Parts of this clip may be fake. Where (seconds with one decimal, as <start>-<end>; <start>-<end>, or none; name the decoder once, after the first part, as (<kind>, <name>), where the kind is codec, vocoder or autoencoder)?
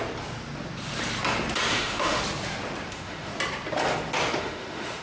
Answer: 1.7-2.2 (autoencoder, DAC-VAE); 2.9-3.3; 4.4-5.0